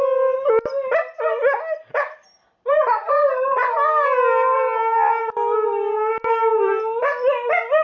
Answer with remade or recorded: recorded